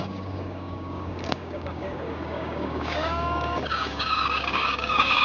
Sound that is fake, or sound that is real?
fake